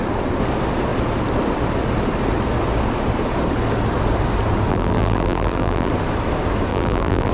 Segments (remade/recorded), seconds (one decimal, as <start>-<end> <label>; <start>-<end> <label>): 0.0-4.7 recorded; 4.7-5.9 remade; 5.9-6.7 recorded; 6.7-7.3 remade